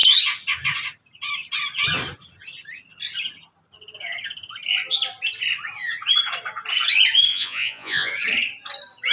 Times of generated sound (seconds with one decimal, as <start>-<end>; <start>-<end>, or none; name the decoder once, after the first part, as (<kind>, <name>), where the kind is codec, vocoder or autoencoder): 7.3-8.1 (vocoder, Vocos)

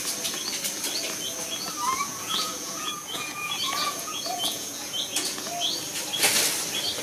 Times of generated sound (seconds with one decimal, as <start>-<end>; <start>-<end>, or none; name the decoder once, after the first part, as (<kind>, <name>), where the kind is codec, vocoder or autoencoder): 2.0-5.5 (vocoder, Vocos)